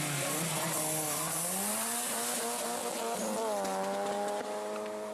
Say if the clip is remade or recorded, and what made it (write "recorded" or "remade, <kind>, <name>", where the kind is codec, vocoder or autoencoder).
recorded